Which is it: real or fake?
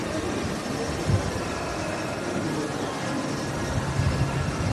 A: real